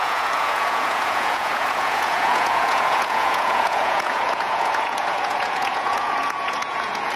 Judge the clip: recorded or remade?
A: remade